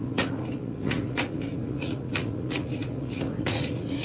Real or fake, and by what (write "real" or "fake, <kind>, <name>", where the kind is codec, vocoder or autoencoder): fake, vocoder, Vocos